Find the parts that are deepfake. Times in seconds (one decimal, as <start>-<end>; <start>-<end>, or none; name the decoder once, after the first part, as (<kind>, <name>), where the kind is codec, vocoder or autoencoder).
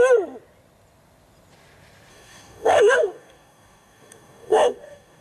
2.1-5.2 (codec, DAC)